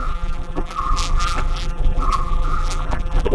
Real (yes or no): no